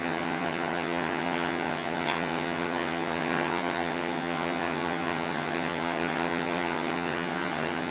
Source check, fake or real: fake